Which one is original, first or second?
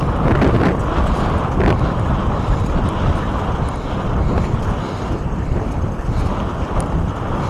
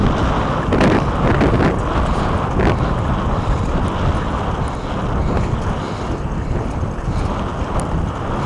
second